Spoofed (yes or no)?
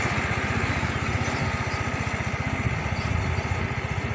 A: no